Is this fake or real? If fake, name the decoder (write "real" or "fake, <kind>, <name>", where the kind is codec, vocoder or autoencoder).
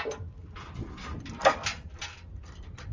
real